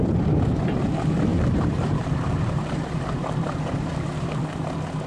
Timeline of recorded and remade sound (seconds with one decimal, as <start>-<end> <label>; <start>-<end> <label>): 0.0-1.3 recorded; 1.3-4.4 remade; 4.4-5.1 recorded